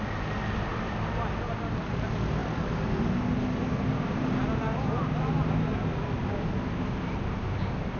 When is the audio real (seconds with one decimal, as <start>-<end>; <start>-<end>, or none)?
0.0-8.0